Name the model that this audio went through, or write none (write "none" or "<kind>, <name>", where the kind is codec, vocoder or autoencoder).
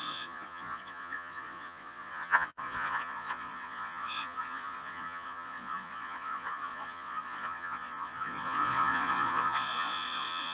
vocoder, Vocos